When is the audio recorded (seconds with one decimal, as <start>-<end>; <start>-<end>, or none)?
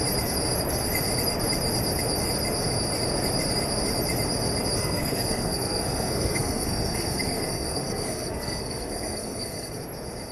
0.0-4.8; 9.8-10.3